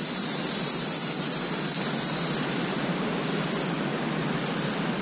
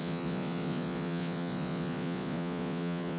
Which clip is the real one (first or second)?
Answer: first